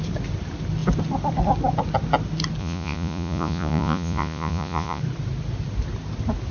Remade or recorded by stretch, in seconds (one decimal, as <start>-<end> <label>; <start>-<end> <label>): 0.0-2.6 recorded; 2.6-5.0 remade; 5.0-6.5 recorded